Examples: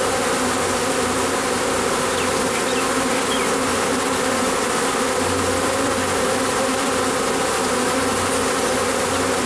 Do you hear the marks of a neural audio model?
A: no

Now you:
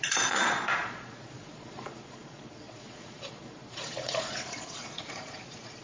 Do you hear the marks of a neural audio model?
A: yes